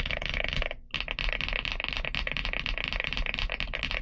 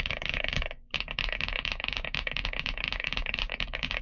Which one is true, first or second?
first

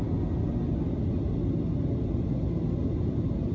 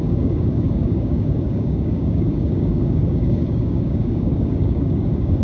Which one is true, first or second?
first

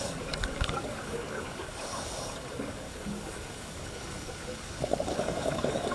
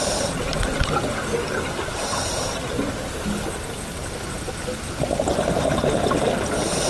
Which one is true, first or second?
second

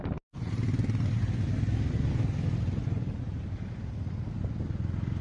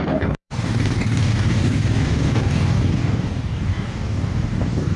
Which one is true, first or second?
first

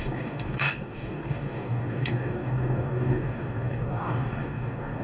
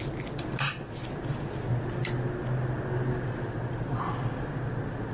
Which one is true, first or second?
second